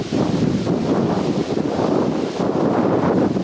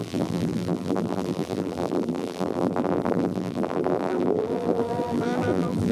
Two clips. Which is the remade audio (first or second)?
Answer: second